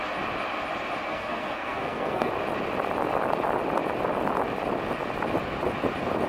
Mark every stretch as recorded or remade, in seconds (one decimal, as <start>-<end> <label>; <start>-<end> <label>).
0.0-1.1 recorded; 1.1-2.3 remade; 2.3-6.3 recorded